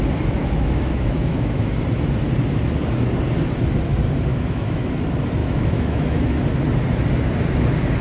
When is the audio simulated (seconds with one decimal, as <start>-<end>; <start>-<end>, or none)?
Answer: 0.4-1.7; 4.3-4.9; 5.4-6.4